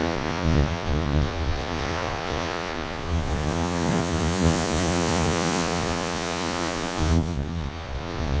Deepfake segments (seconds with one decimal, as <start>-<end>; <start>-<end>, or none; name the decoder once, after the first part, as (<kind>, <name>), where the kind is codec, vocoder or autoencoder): 0.0-8.4 (vocoder, Vocos)

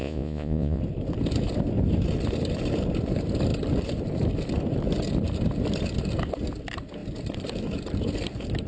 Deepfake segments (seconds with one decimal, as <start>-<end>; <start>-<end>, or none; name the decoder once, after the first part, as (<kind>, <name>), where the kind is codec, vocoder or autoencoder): 0.0-0.8 (vocoder, Vocos)

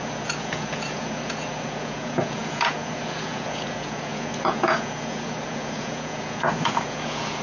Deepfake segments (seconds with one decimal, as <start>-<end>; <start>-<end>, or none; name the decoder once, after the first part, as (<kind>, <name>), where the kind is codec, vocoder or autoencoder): 0.0-7.4 (vocoder, Vocos)

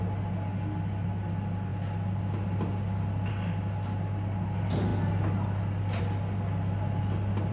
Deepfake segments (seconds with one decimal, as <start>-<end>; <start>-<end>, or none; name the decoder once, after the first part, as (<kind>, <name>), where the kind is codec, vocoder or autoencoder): none